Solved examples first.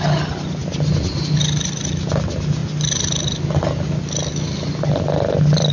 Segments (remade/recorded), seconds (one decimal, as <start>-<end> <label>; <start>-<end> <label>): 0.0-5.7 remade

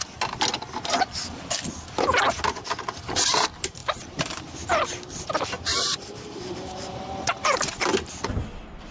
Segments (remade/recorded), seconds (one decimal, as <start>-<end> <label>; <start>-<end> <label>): 0.0-3.8 recorded; 3.8-4.4 remade; 4.4-5.7 recorded; 5.7-7.7 remade; 7.7-8.9 recorded

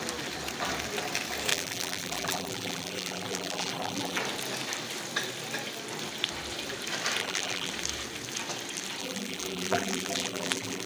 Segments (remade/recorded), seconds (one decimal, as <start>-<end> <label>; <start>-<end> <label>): 0.0-1.5 recorded; 1.5-4.2 remade; 4.2-7.2 recorded; 7.2-7.7 remade; 7.7-9.0 recorded; 9.0-10.9 remade

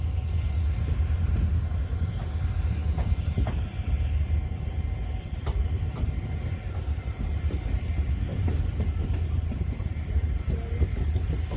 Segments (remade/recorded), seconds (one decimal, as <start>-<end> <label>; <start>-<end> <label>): 0.0-8.3 recorded; 8.3-9.9 remade; 9.9-11.6 recorded

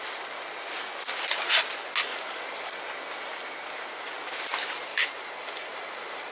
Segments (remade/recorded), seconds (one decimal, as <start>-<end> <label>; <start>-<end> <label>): 0.0-2.1 recorded; 2.1-2.7 remade; 2.7-4.9 recorded; 4.9-6.3 remade

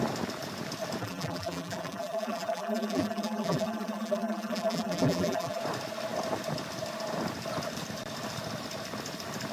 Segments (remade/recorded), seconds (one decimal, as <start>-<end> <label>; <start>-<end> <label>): 0.0-1.0 recorded; 1.0-5.6 remade; 5.6-9.5 recorded

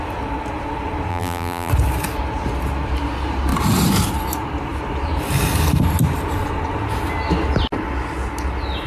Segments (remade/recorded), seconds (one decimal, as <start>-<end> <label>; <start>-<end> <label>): 0.0-1.1 recorded; 1.1-1.7 remade; 1.7-8.9 recorded

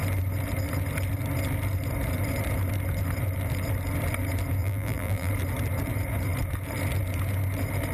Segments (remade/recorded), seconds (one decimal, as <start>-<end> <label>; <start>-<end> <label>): 0.0-4.6 recorded; 4.6-5.3 remade; 5.3-7.9 recorded